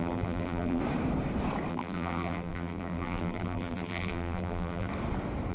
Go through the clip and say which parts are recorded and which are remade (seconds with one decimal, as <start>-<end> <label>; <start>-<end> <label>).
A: 0.0-0.8 remade; 0.8-1.7 recorded; 1.7-4.9 remade; 4.9-5.5 recorded